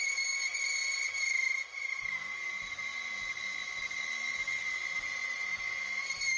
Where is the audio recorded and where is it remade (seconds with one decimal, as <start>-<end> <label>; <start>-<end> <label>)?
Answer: 0.0-6.4 recorded